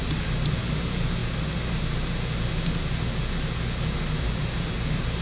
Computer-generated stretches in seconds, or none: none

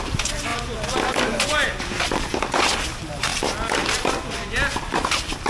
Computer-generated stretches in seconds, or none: none

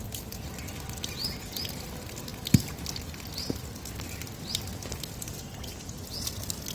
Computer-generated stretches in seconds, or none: none

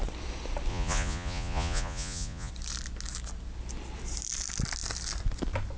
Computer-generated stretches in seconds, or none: 0.7-2.5 (vocoder, Vocos)

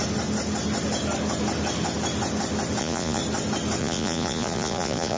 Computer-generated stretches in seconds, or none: 2.8-3.2 (vocoder, Vocos); 3.8-5.2